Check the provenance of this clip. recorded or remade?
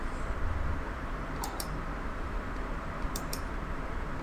remade